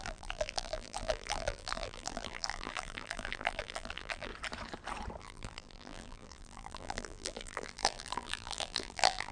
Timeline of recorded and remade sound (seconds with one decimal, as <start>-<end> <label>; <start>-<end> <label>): 0.0-4.3 remade; 4.3-5.2 recorded; 5.2-9.3 remade